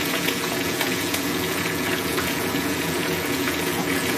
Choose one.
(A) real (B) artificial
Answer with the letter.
B